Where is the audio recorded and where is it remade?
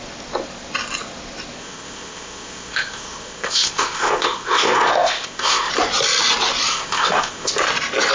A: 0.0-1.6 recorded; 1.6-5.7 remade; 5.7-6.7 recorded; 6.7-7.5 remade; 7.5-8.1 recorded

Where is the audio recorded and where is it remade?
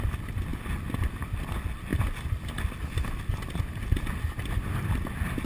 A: 0.0-5.5 recorded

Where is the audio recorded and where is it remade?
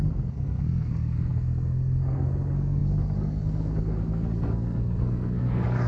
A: 0.0-5.9 remade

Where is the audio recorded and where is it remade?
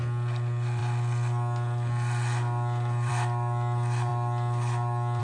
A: 0.0-5.2 recorded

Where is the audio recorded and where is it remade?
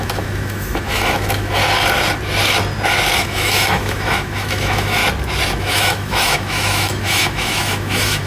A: 0.0-1.6 remade; 1.6-3.2 recorded; 3.2-5.0 remade; 5.0-5.6 recorded; 5.6-8.3 remade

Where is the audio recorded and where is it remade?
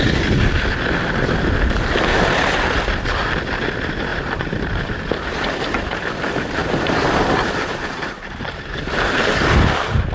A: 0.0-4.1 recorded; 4.1-5.0 remade; 5.0-6.6 recorded; 6.6-9.3 remade; 9.3-10.1 recorded